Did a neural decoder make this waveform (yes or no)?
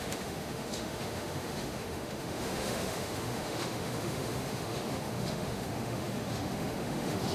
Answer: yes